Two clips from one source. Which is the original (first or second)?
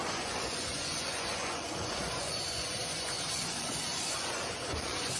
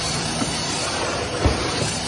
second